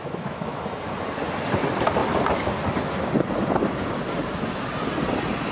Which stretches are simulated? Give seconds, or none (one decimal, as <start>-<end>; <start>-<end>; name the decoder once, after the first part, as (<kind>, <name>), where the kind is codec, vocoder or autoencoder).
0.0-0.6 (autoencoder, DAC-VAE)